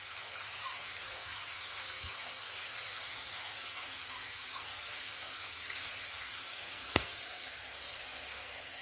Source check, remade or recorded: remade